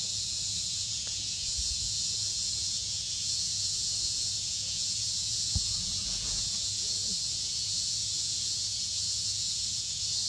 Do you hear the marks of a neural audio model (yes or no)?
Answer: yes